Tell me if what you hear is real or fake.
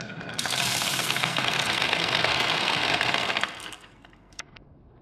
fake